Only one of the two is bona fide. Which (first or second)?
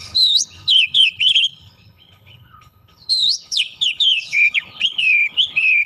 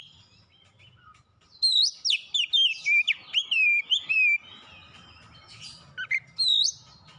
second